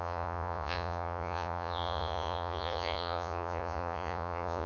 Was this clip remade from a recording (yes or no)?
yes